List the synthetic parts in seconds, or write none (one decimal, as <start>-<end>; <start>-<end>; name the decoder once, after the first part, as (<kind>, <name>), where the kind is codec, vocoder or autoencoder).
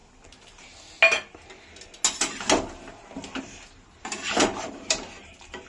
3.4-5.7 (vocoder, BigVGAN v2)